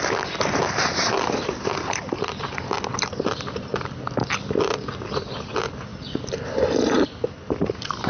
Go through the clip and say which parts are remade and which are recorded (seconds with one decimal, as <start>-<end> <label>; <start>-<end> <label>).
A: 0.0-8.1 recorded